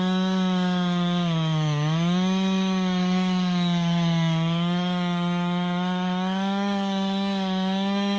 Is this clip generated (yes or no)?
yes